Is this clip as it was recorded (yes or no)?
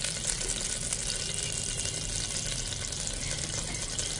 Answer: yes